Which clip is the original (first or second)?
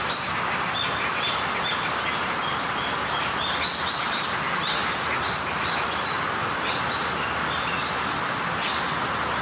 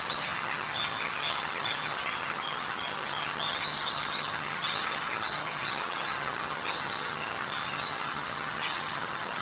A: first